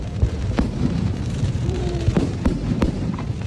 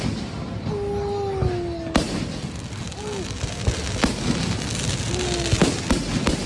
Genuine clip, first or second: second